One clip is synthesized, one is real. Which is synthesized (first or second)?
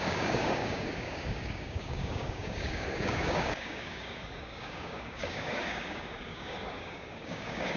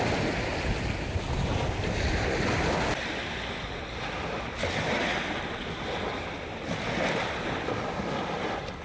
first